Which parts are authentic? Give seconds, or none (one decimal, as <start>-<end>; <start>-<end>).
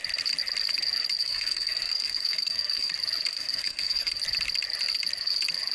0.0-1.2; 2.9-3.3; 4.1-5.7